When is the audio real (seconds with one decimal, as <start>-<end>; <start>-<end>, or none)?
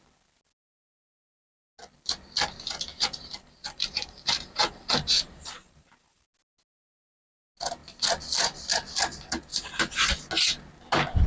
0.0-2.9; 6.2-9.5; 10.2-11.3